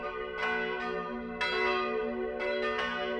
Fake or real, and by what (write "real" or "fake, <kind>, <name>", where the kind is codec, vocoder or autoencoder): real